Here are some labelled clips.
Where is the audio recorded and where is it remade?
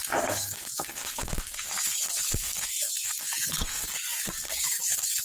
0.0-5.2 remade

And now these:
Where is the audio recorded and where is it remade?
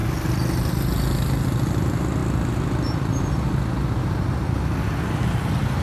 0.0-5.8 recorded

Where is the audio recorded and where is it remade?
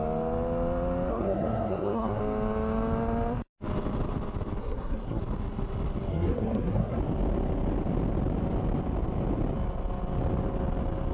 0.0-1.1 recorded; 1.1-2.2 remade; 2.2-4.6 recorded; 4.6-5.2 remade; 5.2-6.1 recorded; 6.1-7.0 remade; 7.0-11.1 recorded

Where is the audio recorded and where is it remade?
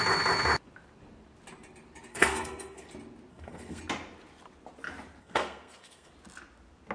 0.0-2.1 recorded; 2.1-2.9 remade; 2.9-3.3 recorded; 3.3-3.8 remade; 3.8-5.2 recorded; 5.2-6.1 remade; 6.1-6.9 recorded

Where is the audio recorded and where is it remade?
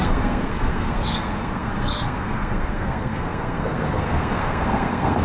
0.0-5.2 remade